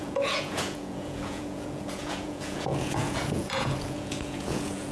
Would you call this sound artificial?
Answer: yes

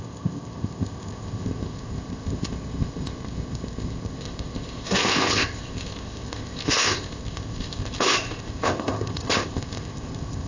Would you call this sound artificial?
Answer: yes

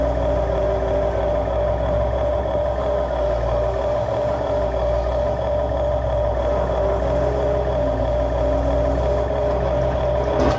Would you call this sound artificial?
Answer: no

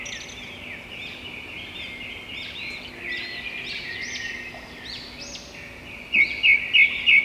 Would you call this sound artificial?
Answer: no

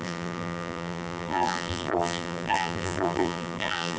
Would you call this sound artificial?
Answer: yes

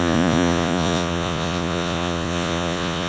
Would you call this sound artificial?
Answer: yes